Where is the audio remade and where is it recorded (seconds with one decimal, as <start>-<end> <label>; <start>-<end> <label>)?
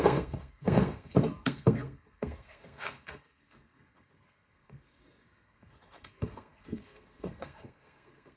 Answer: 0.0-8.4 remade